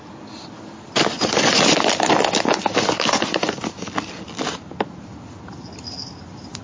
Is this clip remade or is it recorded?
recorded